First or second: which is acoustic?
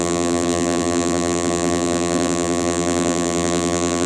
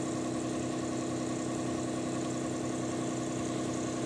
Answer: second